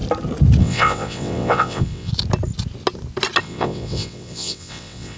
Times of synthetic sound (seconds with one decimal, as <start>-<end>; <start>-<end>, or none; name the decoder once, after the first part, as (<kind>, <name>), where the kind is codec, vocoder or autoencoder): 0.6-2.1 (vocoder, WaveNeXt); 3.4-5.2

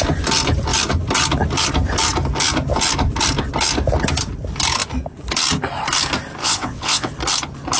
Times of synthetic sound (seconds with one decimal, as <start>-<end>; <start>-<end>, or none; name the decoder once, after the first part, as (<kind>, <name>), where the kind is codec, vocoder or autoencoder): 6.4-7.1 (vocoder, WaveNeXt)

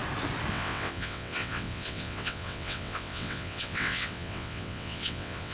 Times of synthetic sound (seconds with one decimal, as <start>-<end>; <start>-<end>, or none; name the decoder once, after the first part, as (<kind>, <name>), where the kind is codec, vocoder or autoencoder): 0.5-5.5 (vocoder, WaveNeXt)

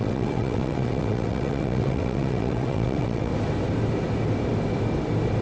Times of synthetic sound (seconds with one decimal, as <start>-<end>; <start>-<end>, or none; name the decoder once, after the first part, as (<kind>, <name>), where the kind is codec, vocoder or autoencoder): 0.0-3.3 (vocoder, WaveNeXt)

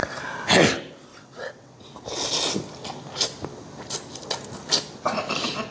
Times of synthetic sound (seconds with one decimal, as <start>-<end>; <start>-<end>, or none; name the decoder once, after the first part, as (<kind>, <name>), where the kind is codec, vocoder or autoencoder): 1.1-1.9 (vocoder, WaveNeXt)

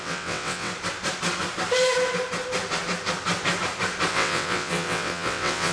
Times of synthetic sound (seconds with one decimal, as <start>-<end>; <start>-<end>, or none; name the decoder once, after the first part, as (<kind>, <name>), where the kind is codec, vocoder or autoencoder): 0.0-0.7 (vocoder, WaveNeXt); 4.1-5.7

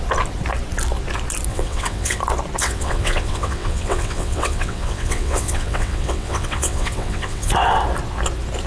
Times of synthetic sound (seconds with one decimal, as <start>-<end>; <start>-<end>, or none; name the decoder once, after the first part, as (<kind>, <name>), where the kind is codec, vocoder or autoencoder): 1.5-2.2 (vocoder, WaveNeXt); 2.6-7.5

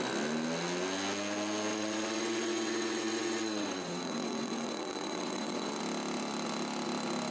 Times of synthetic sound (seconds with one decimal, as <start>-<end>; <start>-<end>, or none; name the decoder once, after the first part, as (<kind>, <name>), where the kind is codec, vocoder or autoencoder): 1.7-5.7 (vocoder, WaveNeXt)